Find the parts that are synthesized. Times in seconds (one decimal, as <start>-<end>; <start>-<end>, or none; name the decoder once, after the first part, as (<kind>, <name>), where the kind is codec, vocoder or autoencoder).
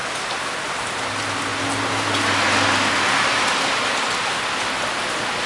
none